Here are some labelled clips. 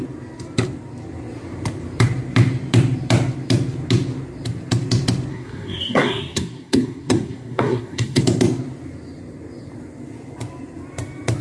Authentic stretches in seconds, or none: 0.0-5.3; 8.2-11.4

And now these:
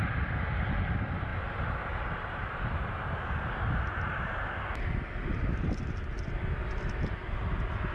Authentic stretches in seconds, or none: 0.0-7.9

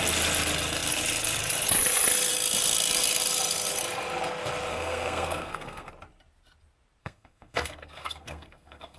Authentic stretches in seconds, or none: 0.0-4.7; 5.9-7.0